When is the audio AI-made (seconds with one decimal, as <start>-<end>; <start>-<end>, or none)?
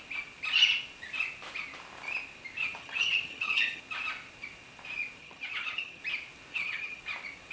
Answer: 2.6-3.8; 5.2-6.0; 6.5-7.0